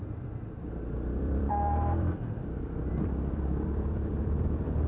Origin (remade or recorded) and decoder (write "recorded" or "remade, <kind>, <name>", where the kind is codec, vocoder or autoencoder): remade, vocoder, BigVGAN v2